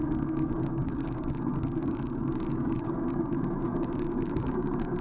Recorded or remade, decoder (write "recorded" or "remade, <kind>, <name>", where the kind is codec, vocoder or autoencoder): remade, codec, DAC